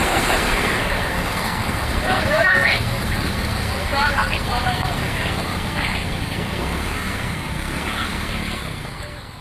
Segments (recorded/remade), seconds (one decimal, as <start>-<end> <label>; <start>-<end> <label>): 0.0-9.4 remade